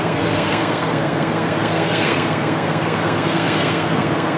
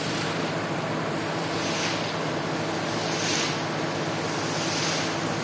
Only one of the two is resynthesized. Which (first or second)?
first